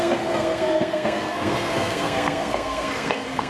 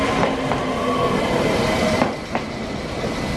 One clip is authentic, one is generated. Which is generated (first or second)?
first